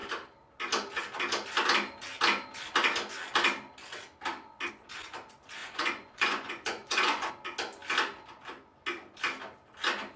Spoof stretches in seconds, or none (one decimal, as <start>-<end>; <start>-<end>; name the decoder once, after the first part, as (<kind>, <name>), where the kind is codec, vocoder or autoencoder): 5.6-7.3 (vocoder, Vocos)